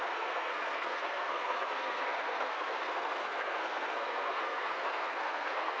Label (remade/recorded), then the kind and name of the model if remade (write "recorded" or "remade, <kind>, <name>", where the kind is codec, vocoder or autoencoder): remade, codec, SNAC